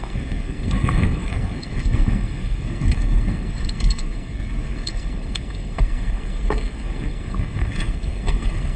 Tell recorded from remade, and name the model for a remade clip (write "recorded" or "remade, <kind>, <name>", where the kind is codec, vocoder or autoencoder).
remade, codec, SNAC